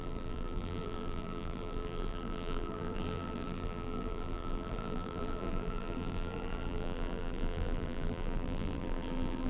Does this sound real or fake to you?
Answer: fake